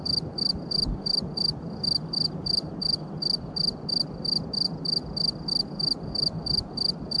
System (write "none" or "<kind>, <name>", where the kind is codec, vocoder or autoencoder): none